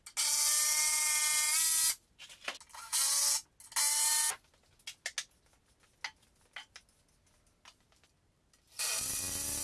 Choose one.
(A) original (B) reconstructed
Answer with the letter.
A